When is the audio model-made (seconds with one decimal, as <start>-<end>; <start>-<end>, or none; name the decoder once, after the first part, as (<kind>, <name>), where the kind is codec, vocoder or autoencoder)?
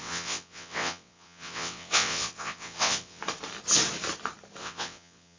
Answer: 0.0-3.2 (vocoder, WaveNeXt); 4.6-5.4